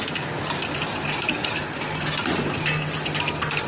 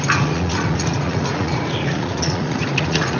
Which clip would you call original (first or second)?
first